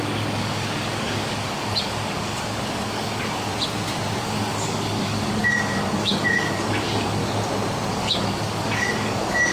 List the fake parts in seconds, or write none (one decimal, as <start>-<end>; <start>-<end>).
0.0-3.5; 4.2-7.2; 7.9-9.5